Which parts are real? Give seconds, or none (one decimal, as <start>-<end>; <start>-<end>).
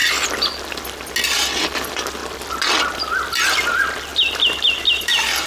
0.0-1.5; 2.2-3.3